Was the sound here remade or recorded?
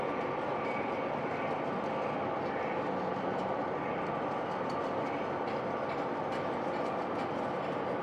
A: recorded